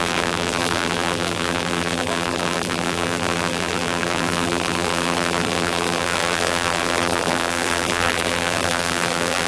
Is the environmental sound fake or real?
fake